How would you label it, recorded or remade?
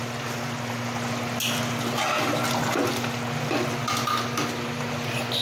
recorded